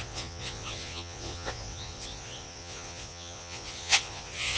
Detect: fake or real fake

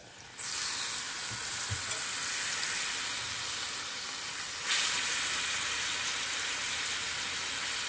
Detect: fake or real real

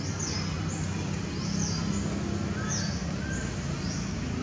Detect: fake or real real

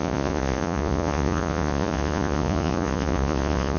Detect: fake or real fake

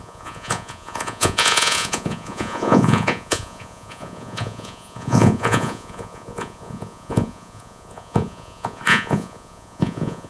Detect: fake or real fake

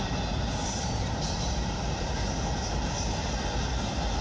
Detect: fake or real real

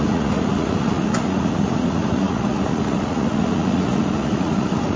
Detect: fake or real fake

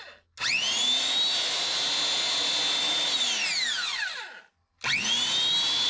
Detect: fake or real real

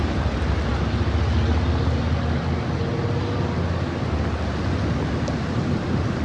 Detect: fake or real real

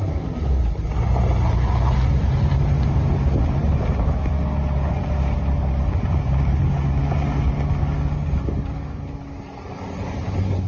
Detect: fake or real real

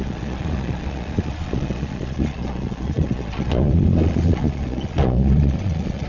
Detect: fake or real fake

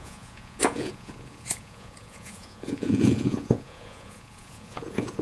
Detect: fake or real fake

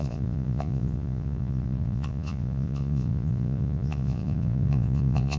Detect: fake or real fake